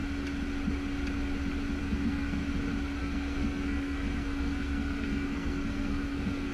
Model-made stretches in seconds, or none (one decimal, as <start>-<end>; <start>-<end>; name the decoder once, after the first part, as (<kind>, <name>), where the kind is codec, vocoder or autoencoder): 1.8-2.4 (codec, SNAC); 3.0-6.5